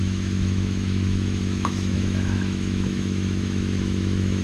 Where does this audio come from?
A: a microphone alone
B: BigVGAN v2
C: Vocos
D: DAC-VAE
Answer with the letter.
D